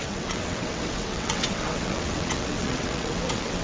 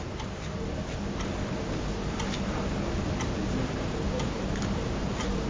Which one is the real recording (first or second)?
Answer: second